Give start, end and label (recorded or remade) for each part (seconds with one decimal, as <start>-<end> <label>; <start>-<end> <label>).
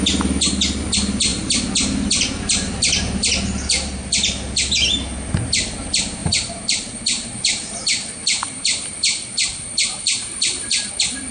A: 0.0-6.2 recorded; 6.2-10.9 remade; 10.9-11.3 recorded